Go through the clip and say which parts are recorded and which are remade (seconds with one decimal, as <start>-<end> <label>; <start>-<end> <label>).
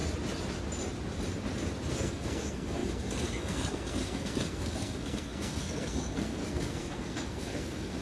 0.0-1.9 recorded; 1.9-8.0 remade